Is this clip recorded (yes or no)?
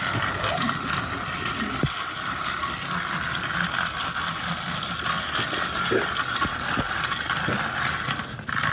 yes